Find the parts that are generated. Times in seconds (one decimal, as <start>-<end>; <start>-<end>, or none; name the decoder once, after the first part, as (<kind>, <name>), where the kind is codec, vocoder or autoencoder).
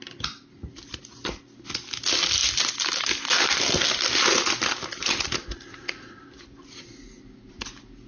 none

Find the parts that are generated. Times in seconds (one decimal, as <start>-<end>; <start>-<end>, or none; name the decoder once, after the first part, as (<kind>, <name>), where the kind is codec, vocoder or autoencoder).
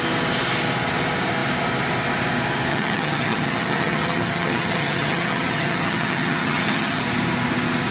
2.7-7.0 (vocoder, HiFi-GAN)